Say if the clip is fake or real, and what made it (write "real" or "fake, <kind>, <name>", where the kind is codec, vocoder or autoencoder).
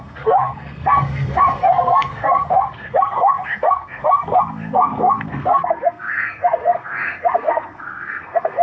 fake, codec, SNAC